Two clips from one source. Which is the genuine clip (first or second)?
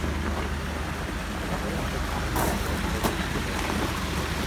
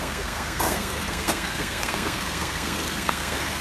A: first